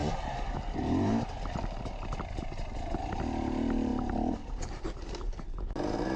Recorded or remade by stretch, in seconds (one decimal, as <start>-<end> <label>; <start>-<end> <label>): 0.0-6.2 recorded